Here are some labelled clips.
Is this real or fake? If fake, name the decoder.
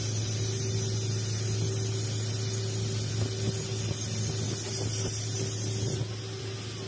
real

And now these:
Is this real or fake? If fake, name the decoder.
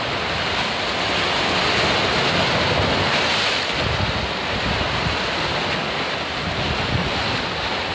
real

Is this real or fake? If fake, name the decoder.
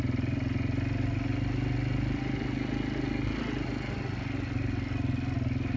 real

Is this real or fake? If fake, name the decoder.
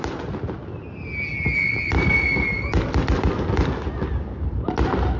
real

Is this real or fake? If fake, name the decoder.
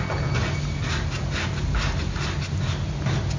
real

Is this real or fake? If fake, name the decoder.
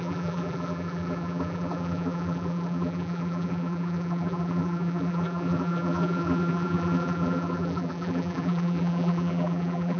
fake, vocoder, BigVGAN v2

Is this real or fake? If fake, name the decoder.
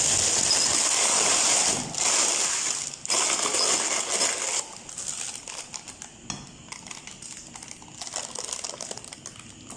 real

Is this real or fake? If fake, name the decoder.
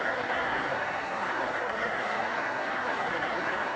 fake, codec, SNAC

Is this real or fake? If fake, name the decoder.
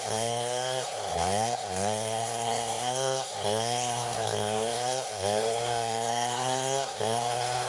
fake, codec, SNAC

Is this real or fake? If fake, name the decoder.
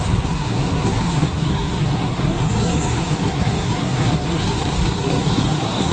fake, codec, SNAC